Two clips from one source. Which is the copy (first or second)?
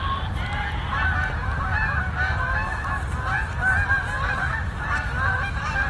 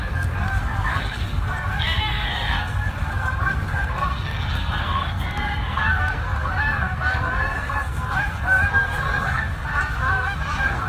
second